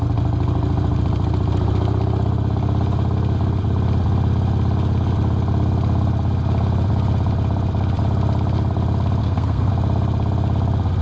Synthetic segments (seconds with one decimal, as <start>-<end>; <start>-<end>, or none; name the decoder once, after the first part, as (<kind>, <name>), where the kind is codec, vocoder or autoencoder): 9.2-9.7 (codec, SNAC)